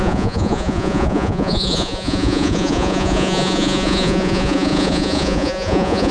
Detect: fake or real fake